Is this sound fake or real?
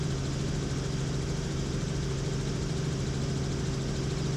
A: real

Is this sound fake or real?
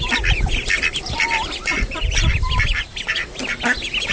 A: real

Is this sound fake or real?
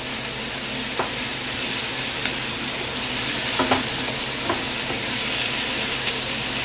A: real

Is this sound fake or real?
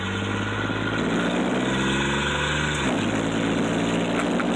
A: real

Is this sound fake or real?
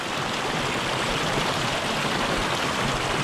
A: real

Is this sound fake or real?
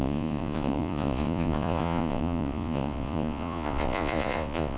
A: fake